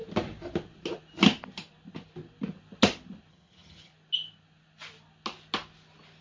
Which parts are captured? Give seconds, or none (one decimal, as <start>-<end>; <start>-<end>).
0.0-3.3; 3.9-6.2